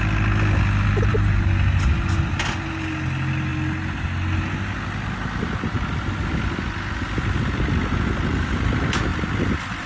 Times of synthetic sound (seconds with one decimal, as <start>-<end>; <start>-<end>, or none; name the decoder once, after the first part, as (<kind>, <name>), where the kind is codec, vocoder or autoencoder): 9.1-9.9 (vocoder, BigVGAN v2)